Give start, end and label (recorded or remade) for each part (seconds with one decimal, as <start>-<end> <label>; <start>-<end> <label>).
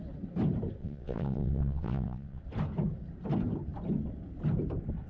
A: 0.0-0.8 recorded; 0.8-2.4 remade; 2.4-5.1 recorded